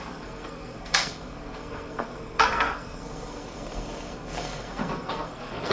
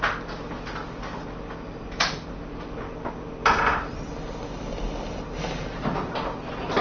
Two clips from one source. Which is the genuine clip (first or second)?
second